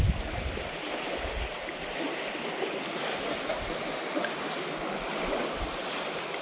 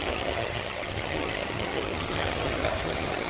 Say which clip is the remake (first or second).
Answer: second